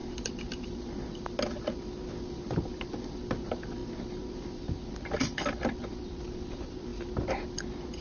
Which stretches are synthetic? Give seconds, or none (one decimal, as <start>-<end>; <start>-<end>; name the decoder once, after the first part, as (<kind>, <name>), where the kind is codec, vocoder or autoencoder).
none